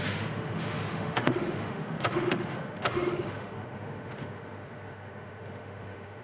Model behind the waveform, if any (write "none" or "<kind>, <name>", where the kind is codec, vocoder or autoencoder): autoencoder, DAC-VAE